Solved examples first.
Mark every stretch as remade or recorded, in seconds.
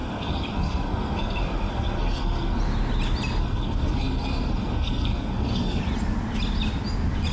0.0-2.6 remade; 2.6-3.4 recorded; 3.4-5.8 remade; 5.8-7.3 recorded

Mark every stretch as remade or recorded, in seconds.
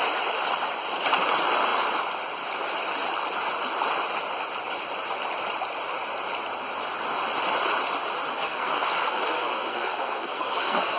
0.0-8.3 recorded; 8.3-11.0 remade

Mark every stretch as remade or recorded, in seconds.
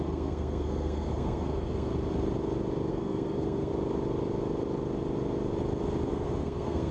0.0-1.9 remade; 1.9-2.9 recorded; 2.9-3.7 remade; 3.7-6.1 recorded; 6.1-6.9 remade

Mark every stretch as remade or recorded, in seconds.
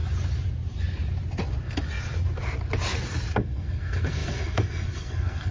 0.0-3.3 recorded; 3.3-5.5 remade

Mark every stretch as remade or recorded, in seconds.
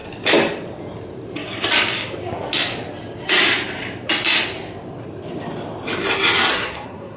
0.0-6.5 recorded; 6.5-7.2 remade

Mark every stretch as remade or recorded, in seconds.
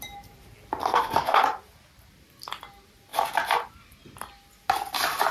0.0-0.8 recorded; 0.8-1.4 remade; 1.4-5.3 recorded